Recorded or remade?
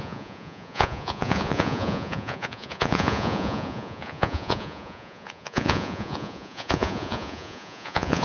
remade